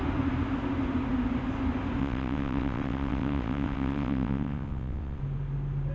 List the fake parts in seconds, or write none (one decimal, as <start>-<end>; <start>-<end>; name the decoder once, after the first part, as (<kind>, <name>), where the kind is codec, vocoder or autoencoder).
2.0-5.2 (vocoder, WaveNeXt)